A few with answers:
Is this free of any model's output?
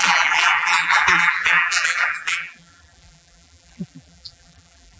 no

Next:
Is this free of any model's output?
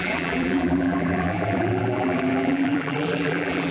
no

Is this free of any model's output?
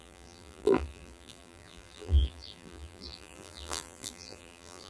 no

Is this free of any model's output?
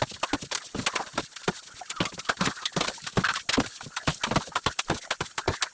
yes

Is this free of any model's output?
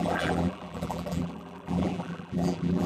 no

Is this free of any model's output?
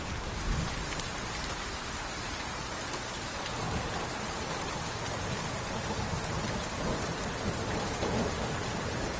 no